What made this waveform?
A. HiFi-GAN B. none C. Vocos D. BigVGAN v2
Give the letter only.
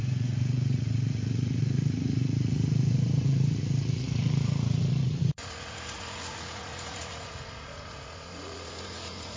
C